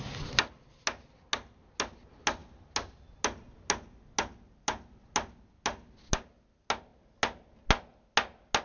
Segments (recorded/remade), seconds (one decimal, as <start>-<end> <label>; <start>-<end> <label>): 0.0-8.6 recorded